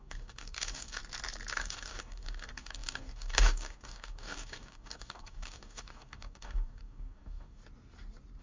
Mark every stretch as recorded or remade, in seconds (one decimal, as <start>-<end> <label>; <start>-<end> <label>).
0.0-1.0 remade; 1.0-1.5 recorded; 1.5-7.6 remade; 7.6-8.4 recorded